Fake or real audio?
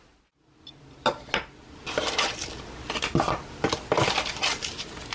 real